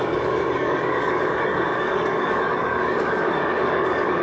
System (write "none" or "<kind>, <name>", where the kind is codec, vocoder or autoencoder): codec, DAC